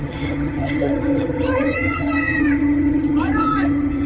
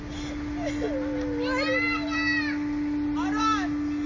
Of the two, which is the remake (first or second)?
first